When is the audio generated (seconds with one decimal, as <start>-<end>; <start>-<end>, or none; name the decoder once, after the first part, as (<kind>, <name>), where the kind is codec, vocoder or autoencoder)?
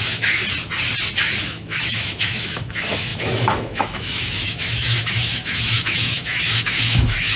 0.0-0.4 (autoencoder, DAC-VAE); 1.4-7.4